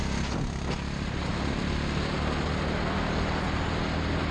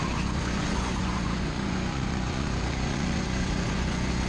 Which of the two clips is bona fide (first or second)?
first